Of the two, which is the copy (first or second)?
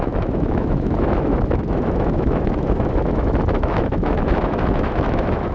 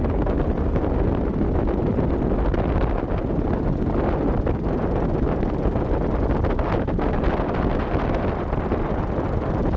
first